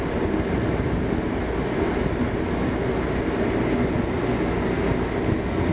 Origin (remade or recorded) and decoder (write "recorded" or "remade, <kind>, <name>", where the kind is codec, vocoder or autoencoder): recorded